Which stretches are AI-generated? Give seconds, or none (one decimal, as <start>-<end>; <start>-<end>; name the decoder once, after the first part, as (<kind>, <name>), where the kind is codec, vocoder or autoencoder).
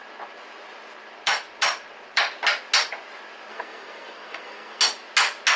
3.5-4.8 (codec, SNAC)